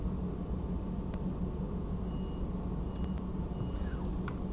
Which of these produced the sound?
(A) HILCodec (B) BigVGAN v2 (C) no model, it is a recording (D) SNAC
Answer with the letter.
C